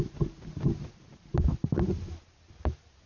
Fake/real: real